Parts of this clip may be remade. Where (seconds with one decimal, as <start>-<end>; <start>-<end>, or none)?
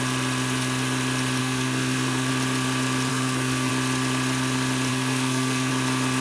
1.4-2.3; 3.1-3.7; 4.9-5.7